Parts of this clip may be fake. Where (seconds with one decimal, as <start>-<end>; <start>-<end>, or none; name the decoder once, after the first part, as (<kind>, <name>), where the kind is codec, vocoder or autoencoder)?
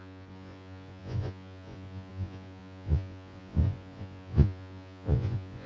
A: 0.0-5.7 (vocoder, Vocos)